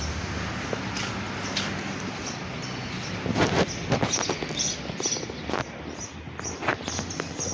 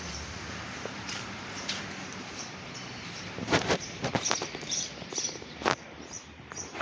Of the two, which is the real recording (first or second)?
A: first